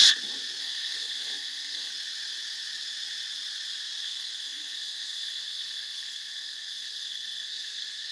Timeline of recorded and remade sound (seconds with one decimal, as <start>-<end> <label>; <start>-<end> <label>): 0.0-0.6 recorded; 0.6-1.9 remade; 1.9-4.0 recorded; 4.0-8.1 remade